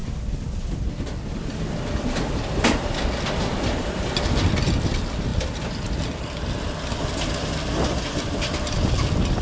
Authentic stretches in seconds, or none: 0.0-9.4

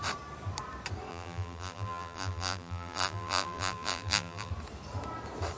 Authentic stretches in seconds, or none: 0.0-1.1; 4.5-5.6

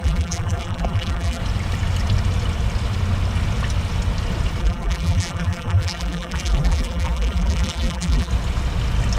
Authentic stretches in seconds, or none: 1.4-4.6; 8.3-9.2